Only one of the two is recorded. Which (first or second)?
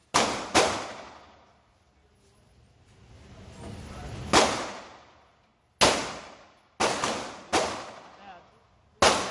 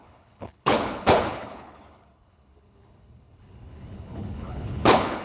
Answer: first